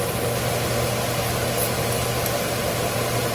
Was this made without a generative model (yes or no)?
yes